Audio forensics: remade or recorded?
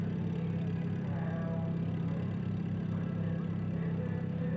recorded